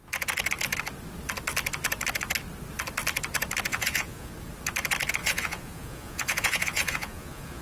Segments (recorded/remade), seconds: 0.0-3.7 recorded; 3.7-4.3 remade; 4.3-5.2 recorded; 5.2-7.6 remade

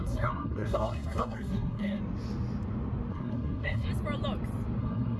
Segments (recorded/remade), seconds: 0.0-2.0 remade; 2.0-3.1 recorded; 3.1-3.9 remade; 3.9-4.8 recorded; 4.8-5.2 remade

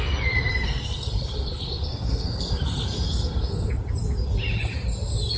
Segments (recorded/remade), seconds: 0.0-0.5 recorded; 0.5-3.7 remade; 3.7-5.4 recorded

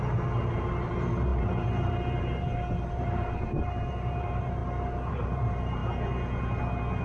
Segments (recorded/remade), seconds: 0.0-4.6 remade; 4.6-5.1 recorded; 5.1-5.8 remade; 5.8-7.0 recorded

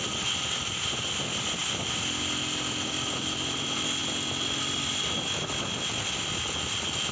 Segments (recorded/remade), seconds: 0.0-7.1 recorded

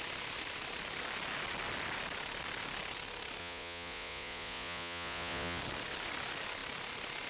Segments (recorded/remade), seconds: 0.0-3.4 recorded; 3.4-5.6 remade; 5.6-7.3 recorded